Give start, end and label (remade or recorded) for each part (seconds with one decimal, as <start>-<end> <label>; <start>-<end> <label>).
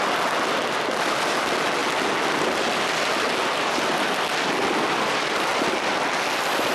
0.0-6.7 recorded